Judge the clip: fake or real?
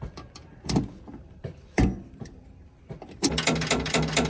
fake